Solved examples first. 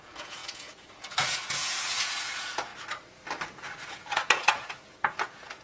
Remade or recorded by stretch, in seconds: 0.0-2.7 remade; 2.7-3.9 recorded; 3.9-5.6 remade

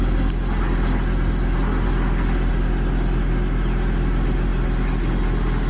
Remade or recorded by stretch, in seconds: 0.0-5.7 recorded